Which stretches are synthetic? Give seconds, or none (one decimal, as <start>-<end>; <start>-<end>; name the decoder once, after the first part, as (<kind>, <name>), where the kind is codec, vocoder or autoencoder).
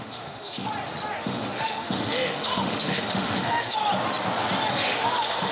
0.0-0.7 (autoencoder, DAC-VAE); 1.2-3.8; 4.7-5.5